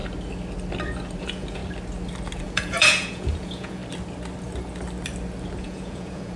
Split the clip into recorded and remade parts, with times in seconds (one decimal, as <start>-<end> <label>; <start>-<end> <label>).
0.0-1.2 recorded; 1.2-1.6 remade; 1.6-2.4 recorded; 2.4-3.8 remade; 3.8-5.6 recorded; 5.6-6.4 remade